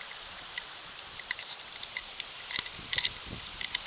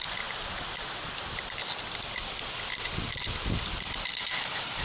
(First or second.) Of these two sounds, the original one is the second